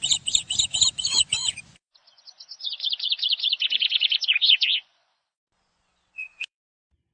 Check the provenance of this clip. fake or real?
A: fake